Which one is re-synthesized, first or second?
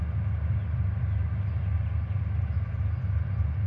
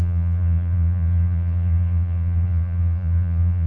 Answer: second